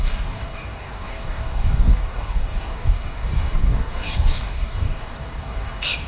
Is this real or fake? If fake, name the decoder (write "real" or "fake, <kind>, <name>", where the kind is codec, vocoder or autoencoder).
fake, codec, DAC